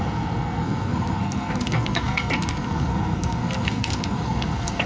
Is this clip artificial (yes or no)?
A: yes